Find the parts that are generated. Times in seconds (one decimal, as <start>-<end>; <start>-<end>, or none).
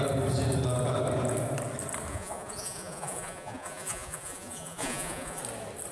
2.1-5.4